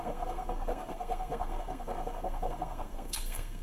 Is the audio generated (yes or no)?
yes